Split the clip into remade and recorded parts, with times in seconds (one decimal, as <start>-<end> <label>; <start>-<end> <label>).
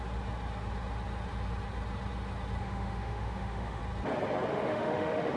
0.0-2.6 recorded; 2.6-3.8 remade; 3.8-4.5 recorded; 4.5-5.4 remade